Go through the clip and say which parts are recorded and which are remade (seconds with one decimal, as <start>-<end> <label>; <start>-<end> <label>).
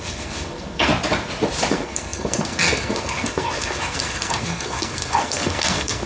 0.0-0.9 remade; 0.9-1.7 recorded; 1.7-6.1 remade